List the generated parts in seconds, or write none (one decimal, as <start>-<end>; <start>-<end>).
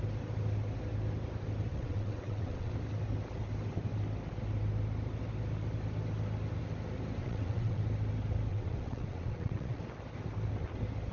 1.7-2.7; 7.2-7.8; 8.5-9.8